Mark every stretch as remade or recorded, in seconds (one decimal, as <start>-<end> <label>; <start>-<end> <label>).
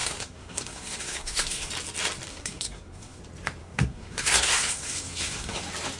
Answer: 0.0-1.7 remade; 1.7-2.3 recorded; 2.3-3.2 remade; 3.2-3.6 recorded; 3.6-5.6 remade; 5.6-6.0 recorded